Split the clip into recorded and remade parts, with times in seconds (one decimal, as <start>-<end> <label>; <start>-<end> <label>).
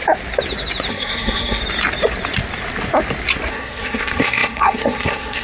0.0-0.9 recorded; 0.9-1.6 remade; 1.6-3.5 recorded; 3.5-5.4 remade